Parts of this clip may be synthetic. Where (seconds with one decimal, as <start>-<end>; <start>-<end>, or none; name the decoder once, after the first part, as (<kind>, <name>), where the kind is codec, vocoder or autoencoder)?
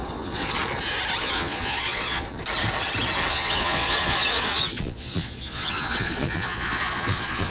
0.0-0.5 (vocoder, Vocos); 1.2-2.4; 3.3-7.5